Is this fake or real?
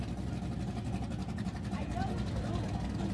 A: real